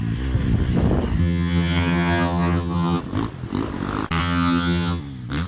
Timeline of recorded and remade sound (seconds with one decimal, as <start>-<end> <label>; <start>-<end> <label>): 0.0-1.2 recorded; 1.2-3.0 remade; 3.0-4.2 recorded; 4.2-5.0 remade; 5.0-5.5 recorded